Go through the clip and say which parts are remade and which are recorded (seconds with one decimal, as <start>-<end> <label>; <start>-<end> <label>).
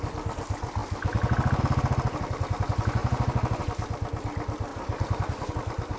0.0-3.0 recorded; 3.0-3.6 remade; 3.6-4.7 recorded; 4.7-5.5 remade; 5.5-6.0 recorded